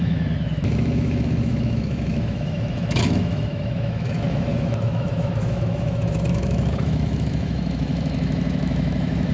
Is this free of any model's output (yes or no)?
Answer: no